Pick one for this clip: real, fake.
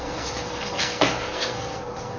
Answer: fake